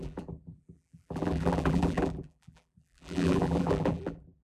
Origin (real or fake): fake